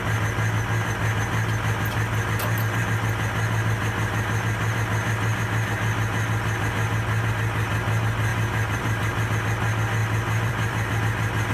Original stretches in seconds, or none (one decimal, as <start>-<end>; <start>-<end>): 0.0-8.3; 9.3-10.0; 11.0-11.5